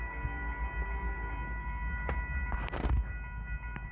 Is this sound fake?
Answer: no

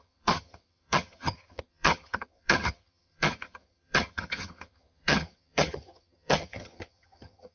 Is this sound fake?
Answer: yes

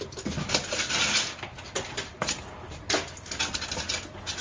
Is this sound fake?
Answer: no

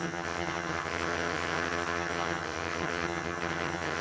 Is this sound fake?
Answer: yes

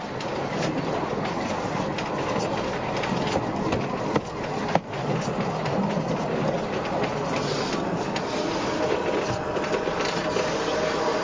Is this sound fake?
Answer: no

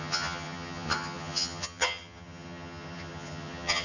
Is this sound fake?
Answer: yes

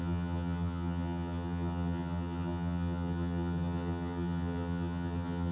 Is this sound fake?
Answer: yes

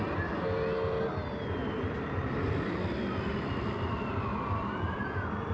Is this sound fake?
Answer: no